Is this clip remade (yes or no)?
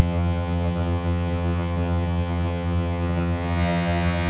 yes